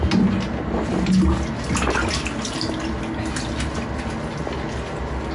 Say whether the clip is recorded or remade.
recorded